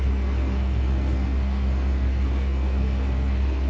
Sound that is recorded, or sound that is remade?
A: remade